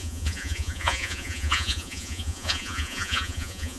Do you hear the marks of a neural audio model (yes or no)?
yes